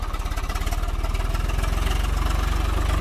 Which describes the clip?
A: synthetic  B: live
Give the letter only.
B